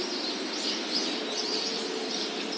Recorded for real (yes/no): no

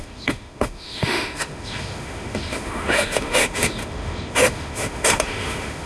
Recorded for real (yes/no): no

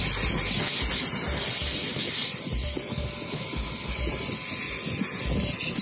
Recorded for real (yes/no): yes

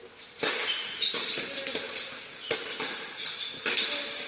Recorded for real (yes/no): yes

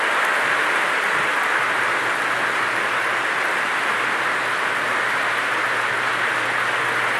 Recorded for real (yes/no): yes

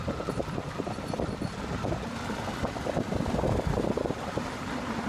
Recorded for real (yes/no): yes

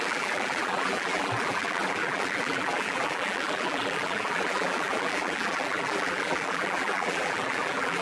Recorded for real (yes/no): no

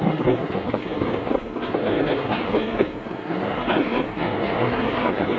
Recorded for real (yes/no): no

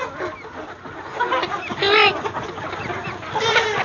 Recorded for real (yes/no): yes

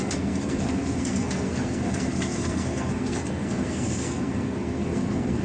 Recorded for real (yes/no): no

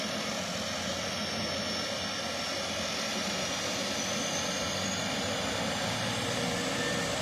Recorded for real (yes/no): yes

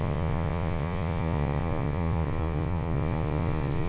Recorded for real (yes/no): no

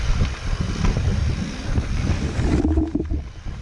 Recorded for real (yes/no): yes